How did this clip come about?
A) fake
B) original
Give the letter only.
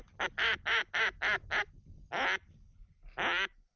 B